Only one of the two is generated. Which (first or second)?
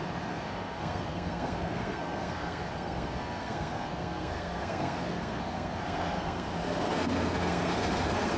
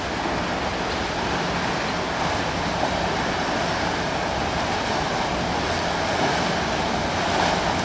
first